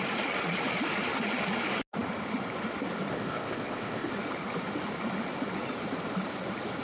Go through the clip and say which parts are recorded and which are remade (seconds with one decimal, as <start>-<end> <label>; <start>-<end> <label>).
0.0-3.1 recorded; 3.1-4.1 remade; 4.1-6.8 recorded